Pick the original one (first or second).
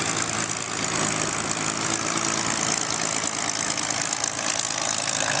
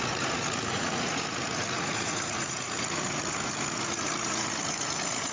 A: first